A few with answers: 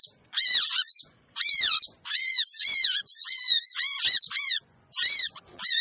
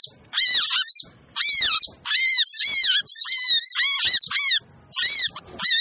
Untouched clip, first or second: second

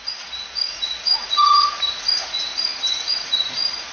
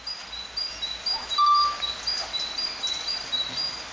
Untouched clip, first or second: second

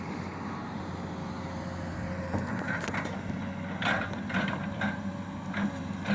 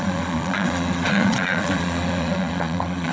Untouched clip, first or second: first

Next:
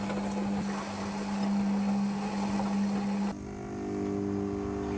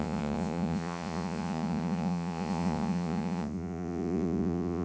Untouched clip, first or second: first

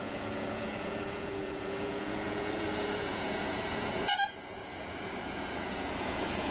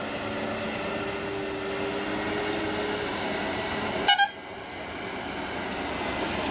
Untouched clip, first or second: second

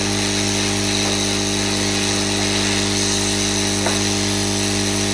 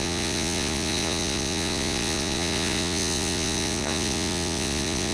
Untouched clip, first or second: first